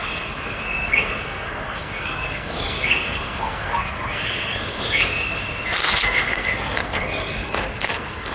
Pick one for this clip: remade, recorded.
remade